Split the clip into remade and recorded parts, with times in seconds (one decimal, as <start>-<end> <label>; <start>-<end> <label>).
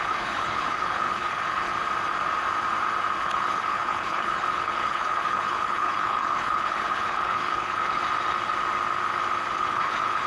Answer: 0.0-1.7 remade; 1.7-3.2 recorded; 3.2-8.0 remade; 8.0-9.6 recorded; 9.6-10.3 remade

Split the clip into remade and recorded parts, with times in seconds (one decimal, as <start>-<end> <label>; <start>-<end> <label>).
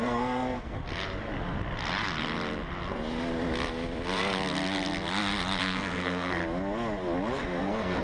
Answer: 0.0-0.8 remade; 0.8-5.6 recorded; 5.6-6.4 remade; 6.4-7.4 recorded; 7.4-8.0 remade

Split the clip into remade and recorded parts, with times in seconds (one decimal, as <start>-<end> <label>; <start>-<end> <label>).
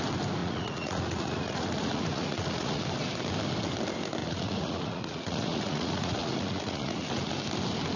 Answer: 0.0-0.4 recorded; 0.4-2.8 remade; 2.8-4.2 recorded; 4.2-7.3 remade; 7.3-8.0 recorded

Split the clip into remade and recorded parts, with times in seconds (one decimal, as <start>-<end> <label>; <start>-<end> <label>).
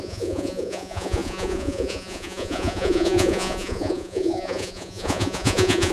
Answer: 0.0-5.9 remade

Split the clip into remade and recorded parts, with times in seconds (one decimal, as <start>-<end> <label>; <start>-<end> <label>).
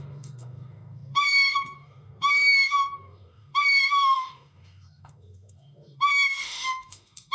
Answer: 0.0-7.3 remade